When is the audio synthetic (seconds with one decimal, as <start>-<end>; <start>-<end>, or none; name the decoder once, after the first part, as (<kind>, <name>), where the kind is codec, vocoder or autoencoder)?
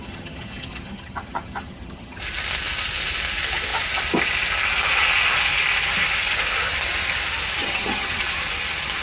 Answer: 0.0-2.2 (vocoder, HiFi-GAN); 7.6-8.2